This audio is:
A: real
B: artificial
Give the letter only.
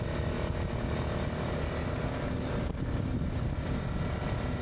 A